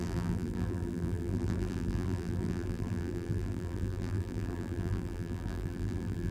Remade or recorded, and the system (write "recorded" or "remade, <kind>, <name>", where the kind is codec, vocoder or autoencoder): remade, vocoder, BigVGAN v2